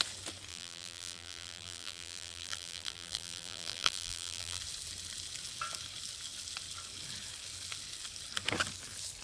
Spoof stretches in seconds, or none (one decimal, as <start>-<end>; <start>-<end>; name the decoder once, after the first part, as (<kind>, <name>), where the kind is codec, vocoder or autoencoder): 0.5-4.6 (vocoder, BigVGAN v2)